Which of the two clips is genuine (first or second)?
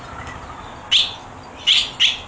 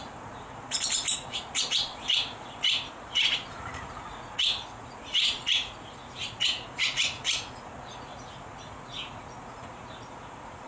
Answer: first